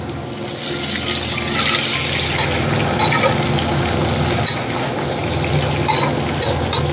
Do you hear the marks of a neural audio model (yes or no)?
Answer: no